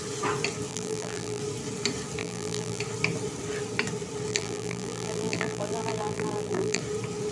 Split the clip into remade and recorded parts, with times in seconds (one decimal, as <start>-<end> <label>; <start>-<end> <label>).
0.0-0.7 recorded; 0.7-1.4 remade; 1.4-2.2 recorded; 2.2-2.8 remade; 2.8-4.3 recorded; 4.3-6.8 remade; 6.8-7.3 recorded

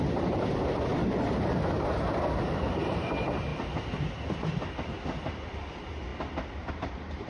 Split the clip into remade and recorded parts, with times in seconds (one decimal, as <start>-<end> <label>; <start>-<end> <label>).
0.0-3.5 remade; 3.5-4.4 recorded; 4.4-7.3 remade

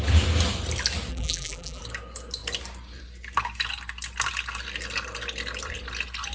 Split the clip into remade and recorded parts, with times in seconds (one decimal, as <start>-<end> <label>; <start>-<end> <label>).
0.0-1.1 recorded; 1.1-1.8 remade; 1.8-6.3 recorded

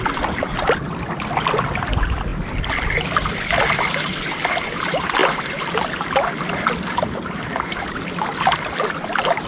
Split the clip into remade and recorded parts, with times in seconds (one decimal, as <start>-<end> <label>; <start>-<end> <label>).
0.0-9.5 recorded

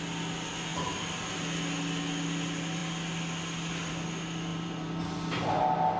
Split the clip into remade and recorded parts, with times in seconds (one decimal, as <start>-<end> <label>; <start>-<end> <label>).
0.0-0.7 recorded; 0.7-1.2 remade; 1.2-4.5 recorded; 4.5-5.0 remade; 5.0-6.0 recorded

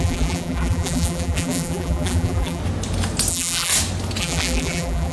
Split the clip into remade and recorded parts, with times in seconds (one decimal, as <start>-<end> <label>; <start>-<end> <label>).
0.0-2.6 remade; 2.6-3.3 recorded; 3.3-3.7 remade; 3.7-4.2 recorded; 4.2-5.1 remade